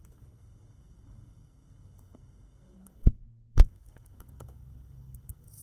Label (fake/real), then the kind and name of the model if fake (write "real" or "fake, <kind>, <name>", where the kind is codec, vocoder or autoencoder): fake, codec, SNAC